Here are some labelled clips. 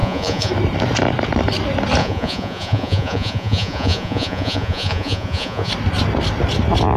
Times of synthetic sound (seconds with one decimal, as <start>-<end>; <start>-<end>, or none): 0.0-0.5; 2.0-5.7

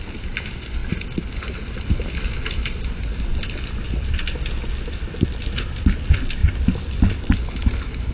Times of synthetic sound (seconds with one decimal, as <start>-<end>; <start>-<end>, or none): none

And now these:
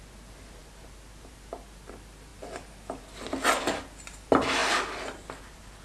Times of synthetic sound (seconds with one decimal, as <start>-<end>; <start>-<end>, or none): none